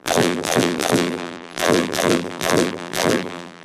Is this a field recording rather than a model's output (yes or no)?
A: no